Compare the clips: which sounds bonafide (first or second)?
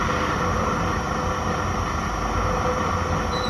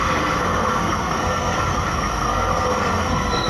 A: first